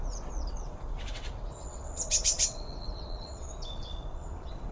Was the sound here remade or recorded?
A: remade